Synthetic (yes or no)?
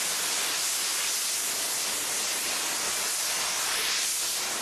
no